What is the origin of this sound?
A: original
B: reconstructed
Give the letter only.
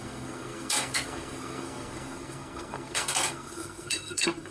B